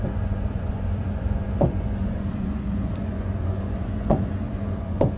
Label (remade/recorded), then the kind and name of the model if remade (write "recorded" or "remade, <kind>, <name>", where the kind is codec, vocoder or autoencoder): remade, vocoder, Vocos